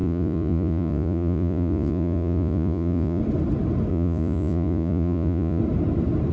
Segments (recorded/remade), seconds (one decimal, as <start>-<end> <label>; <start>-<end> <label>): 0.0-3.2 remade; 3.2-3.9 recorded; 3.9-5.6 remade; 5.6-6.3 recorded

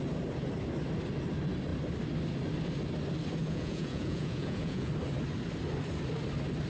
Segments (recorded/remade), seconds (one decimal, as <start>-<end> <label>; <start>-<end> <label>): 0.0-3.4 recorded; 3.4-4.9 remade; 4.9-6.7 recorded